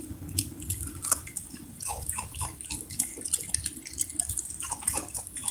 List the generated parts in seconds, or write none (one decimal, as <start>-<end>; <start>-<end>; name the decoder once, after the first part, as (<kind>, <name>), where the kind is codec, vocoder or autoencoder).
0.0-3.1 (codec, DAC); 4.3-5.5